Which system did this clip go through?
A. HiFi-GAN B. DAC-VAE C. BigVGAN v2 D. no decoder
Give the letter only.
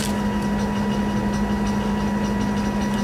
D